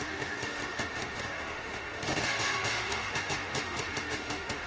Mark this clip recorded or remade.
remade